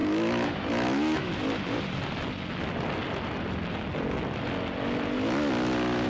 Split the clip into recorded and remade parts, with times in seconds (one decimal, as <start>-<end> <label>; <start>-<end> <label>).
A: 0.0-1.3 remade; 1.3-6.1 recorded